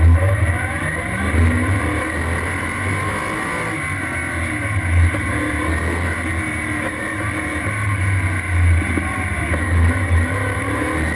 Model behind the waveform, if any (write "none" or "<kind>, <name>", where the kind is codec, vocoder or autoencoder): none